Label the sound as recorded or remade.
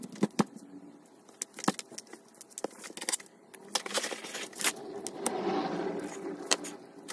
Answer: recorded